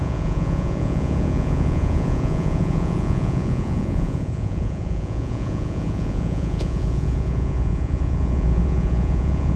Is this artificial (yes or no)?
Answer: yes